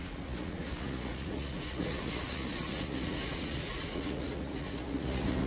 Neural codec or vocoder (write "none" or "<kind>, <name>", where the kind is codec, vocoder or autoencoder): vocoder, Vocos